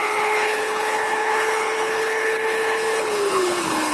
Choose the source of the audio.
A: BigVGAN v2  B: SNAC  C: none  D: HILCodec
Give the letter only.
D